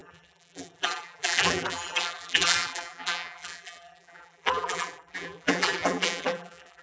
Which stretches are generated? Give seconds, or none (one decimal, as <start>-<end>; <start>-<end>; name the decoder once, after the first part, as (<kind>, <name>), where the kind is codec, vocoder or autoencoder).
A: 0.0-6.8 (vocoder, BigVGAN v2)